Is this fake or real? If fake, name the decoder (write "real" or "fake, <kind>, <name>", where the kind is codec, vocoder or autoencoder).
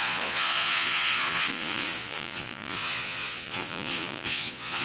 fake, vocoder, Vocos